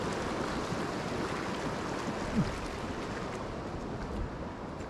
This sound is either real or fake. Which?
real